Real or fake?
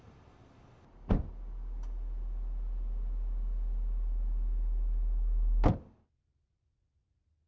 real